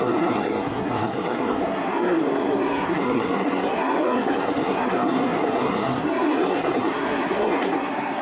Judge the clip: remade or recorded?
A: remade